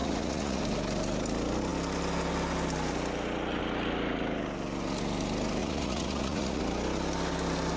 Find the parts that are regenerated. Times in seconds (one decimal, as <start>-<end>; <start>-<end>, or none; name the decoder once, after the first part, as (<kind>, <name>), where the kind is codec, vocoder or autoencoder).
0.0-0.6 (vocoder, Vocos); 5.6-6.6